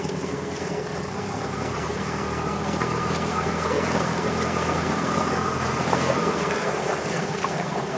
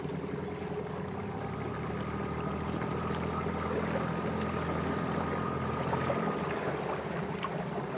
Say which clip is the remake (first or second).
first